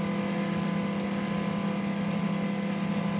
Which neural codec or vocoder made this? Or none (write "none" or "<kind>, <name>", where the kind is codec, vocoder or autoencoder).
none